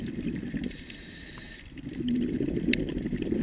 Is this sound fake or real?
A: fake